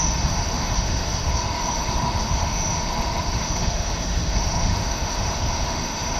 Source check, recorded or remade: remade